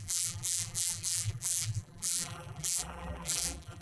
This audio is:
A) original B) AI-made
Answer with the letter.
B